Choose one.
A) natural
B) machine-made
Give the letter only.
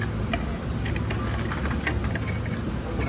A